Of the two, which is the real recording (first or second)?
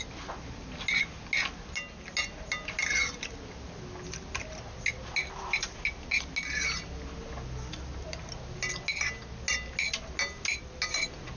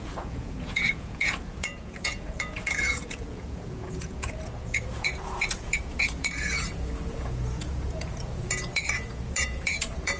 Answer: first